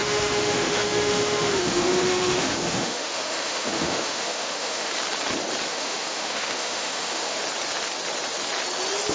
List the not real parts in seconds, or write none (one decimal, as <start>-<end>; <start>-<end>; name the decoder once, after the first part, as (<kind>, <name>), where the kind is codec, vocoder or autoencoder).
0.0-4.9 (autoencoder, DAC-VAE); 5.7-7.4